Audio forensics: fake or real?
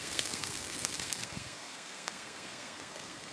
fake